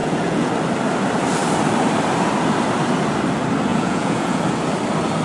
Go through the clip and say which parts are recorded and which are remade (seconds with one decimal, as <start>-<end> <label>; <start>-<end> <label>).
0.0-0.5 remade; 0.5-3.7 recorded; 3.7-4.4 remade; 4.4-5.2 recorded